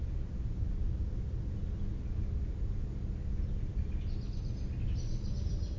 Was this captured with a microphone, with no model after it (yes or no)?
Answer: yes